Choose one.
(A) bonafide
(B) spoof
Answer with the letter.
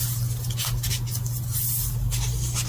A